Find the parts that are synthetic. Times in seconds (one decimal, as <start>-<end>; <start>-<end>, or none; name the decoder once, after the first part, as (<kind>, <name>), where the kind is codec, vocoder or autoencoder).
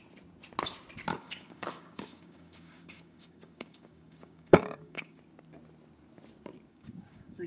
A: 1.1-5.2 (codec, DAC); 6.7-7.5